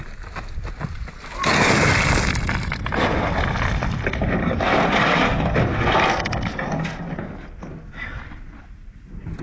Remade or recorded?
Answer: recorded